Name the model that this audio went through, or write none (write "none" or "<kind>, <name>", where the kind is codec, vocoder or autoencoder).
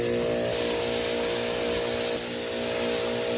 none